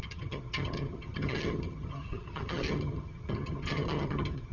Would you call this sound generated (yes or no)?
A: yes